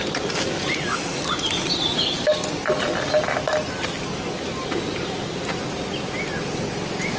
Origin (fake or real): real